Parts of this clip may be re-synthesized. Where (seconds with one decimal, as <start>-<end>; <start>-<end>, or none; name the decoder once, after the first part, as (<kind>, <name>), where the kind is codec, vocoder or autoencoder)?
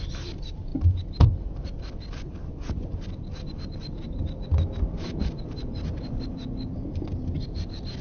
none